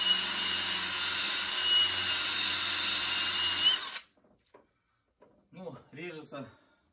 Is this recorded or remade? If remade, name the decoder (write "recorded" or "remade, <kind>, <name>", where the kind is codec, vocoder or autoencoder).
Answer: recorded